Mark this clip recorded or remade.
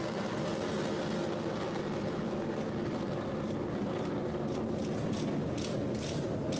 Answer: recorded